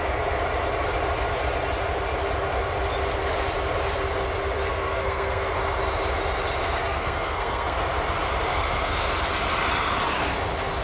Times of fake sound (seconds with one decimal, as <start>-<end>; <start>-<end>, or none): 4.7-5.5; 6.6-7.8; 8.5-9.3